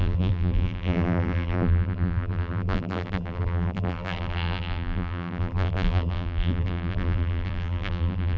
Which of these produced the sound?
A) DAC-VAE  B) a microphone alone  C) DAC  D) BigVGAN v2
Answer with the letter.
D